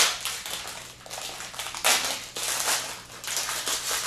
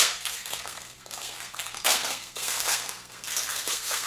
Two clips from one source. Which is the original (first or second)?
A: first